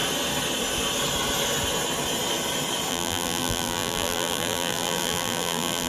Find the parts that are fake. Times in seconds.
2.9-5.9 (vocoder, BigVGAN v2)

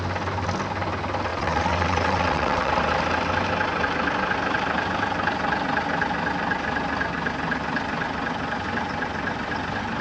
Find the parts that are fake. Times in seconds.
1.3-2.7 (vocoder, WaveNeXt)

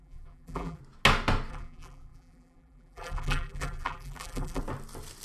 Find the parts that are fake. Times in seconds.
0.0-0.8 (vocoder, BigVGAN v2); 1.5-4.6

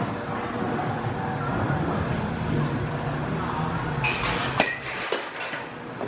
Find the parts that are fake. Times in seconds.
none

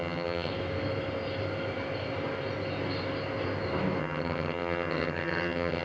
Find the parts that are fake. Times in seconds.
0.0-0.5 (vocoder, HiFi-GAN); 4.0-5.8

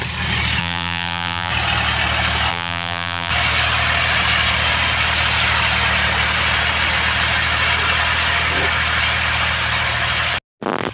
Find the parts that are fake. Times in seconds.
0.6-1.5 (vocoder, BigVGAN v2); 2.5-3.3

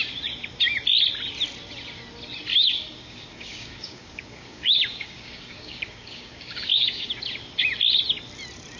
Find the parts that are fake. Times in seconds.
2.5-7.1 (codec, DAC)